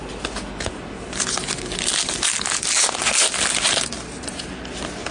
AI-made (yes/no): no